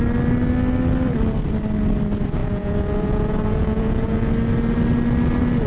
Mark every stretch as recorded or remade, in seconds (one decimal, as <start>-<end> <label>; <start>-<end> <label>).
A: 0.0-2.4 recorded; 2.4-4.3 remade; 4.3-5.7 recorded